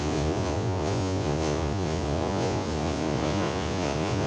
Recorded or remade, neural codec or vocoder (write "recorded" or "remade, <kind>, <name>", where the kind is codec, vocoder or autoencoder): remade, vocoder, Vocos